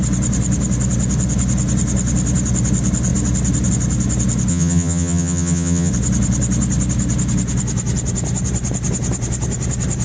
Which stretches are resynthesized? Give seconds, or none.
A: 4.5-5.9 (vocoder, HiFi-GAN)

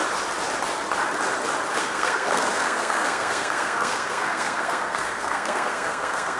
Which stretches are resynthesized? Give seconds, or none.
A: 1.8-6.4 (codec, SNAC)

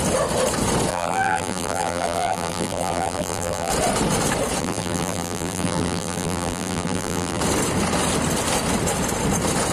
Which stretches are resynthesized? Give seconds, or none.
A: 0.9-3.7 (vocoder, BigVGAN v2); 4.6-7.4

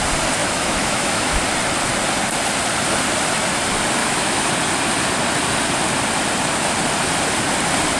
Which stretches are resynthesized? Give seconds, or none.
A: 0.4-1.4 (autoencoder, DAC-VAE); 4.0-4.5

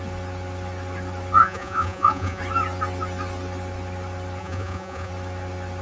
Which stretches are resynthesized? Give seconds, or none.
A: 1.4-2.4 (vocoder, Vocos); 4.4-5.1